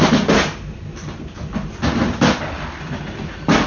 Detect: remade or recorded recorded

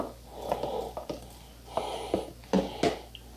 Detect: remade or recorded recorded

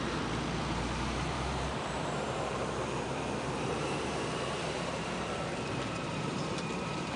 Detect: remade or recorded remade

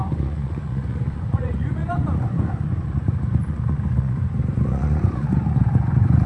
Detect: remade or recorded remade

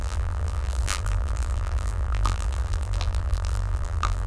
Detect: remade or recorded remade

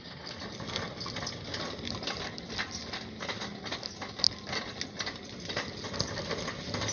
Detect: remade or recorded recorded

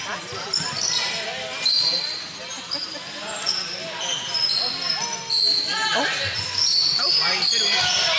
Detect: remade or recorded recorded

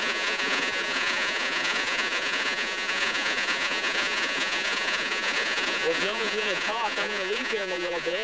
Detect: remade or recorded remade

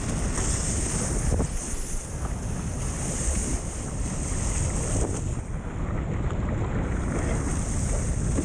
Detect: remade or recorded recorded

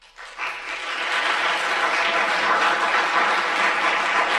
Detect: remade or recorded recorded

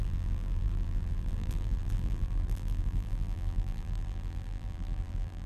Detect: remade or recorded remade